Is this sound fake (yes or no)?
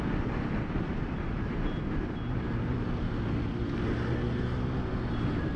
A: no